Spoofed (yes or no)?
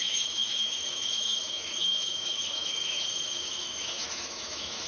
yes